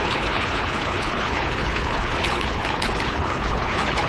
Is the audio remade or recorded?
remade